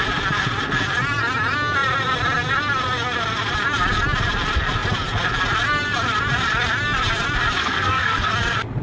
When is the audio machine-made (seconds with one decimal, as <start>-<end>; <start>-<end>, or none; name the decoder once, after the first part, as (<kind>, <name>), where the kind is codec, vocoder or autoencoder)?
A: 7.6-8.3 (codec, SNAC)